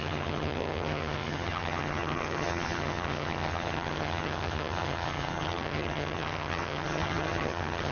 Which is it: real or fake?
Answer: fake